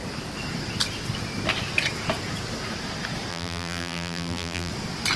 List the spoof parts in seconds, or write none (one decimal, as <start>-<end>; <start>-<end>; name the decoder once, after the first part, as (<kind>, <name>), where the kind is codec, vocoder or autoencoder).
3.3-4.7 (vocoder, BigVGAN v2)